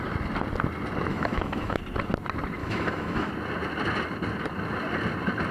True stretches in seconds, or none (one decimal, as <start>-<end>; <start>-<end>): 0.0-1.1; 1.8-2.6; 3.3-5.5